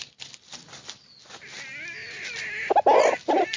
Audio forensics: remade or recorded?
recorded